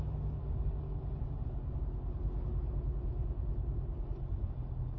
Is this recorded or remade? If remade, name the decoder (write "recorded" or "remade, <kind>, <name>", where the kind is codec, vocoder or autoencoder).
recorded